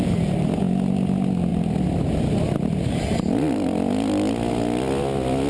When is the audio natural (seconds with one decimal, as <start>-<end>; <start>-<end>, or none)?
0.0-5.5